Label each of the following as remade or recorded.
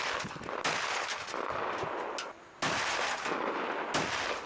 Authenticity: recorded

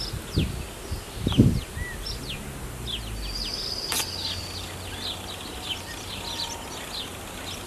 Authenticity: recorded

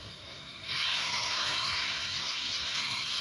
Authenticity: remade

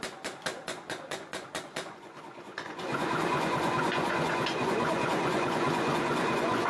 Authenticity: remade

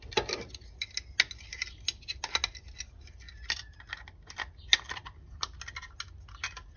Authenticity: recorded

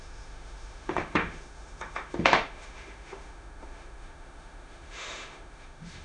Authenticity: remade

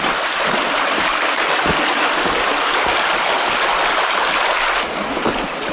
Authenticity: recorded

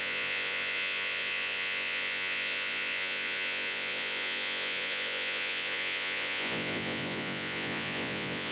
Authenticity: remade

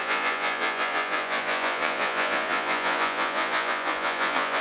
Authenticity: remade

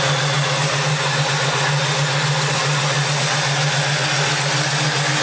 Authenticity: recorded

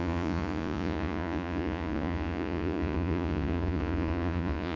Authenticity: remade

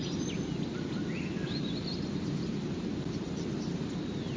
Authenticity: recorded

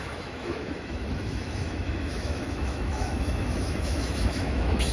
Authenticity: remade